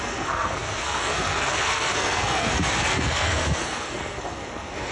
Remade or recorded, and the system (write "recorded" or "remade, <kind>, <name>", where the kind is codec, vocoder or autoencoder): remade, codec, SNAC